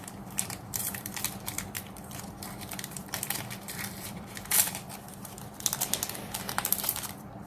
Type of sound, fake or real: fake